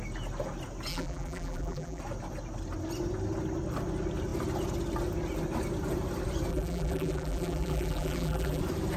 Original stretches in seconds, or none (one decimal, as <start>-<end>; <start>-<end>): 0.0-0.9; 2.0-6.5; 8.6-9.0